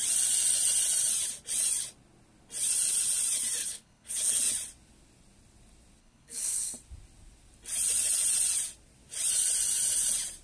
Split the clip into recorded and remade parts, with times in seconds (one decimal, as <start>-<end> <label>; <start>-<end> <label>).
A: 0.0-3.6 recorded; 3.6-4.4 remade; 4.4-6.0 recorded; 6.0-6.7 remade; 6.7-10.4 recorded